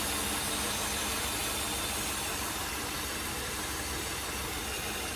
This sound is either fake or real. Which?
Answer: real